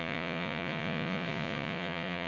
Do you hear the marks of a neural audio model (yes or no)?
yes